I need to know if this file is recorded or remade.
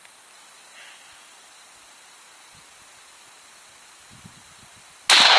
recorded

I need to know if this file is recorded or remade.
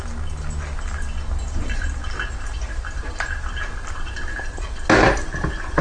recorded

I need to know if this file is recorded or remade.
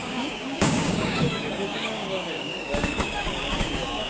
remade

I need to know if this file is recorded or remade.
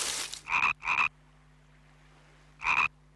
recorded